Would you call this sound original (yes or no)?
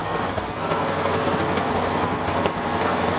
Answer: no